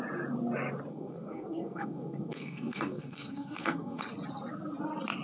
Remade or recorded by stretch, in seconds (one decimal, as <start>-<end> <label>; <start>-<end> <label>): 0.0-0.9 recorded; 0.9-4.0 remade; 4.0-5.2 recorded